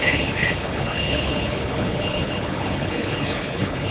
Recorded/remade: remade